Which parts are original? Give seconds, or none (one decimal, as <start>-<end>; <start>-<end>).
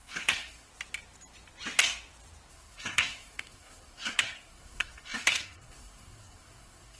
0.7-2.5